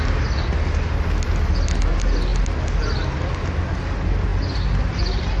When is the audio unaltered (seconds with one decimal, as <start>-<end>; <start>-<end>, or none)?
0.0-5.4